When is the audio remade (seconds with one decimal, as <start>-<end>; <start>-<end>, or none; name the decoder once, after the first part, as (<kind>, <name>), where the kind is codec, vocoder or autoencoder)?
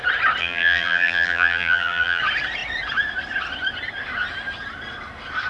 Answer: 0.4-2.2 (vocoder, BigVGAN v2)